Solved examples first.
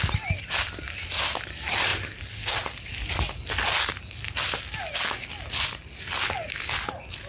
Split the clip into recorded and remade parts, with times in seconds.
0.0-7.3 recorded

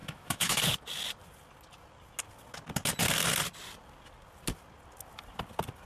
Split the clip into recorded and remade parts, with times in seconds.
0.0-0.6 remade; 0.6-5.9 recorded

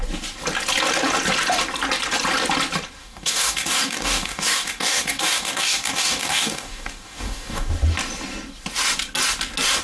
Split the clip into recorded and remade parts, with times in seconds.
0.0-3.0 recorded; 3.0-7.7 remade; 7.7-9.8 recorded

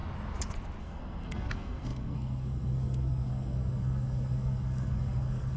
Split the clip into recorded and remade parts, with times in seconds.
0.0-0.8 recorded; 0.8-5.6 remade

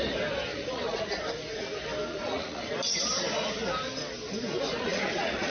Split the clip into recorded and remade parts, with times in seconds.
0.0-0.5 recorded; 0.5-1.2 remade; 1.2-2.1 recorded; 2.1-2.7 remade; 2.7-4.7 recorded; 4.7-5.5 remade

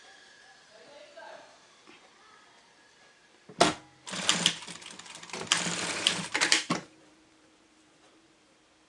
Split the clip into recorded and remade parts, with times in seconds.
0.0-2.1 remade; 2.1-5.8 recorded; 5.8-8.9 remade

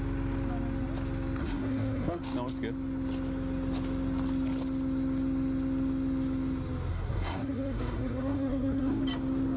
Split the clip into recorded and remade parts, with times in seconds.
0.0-1.4 recorded; 1.4-2.2 remade; 2.2-6.9 recorded; 6.9-9.0 remade; 9.0-9.6 recorded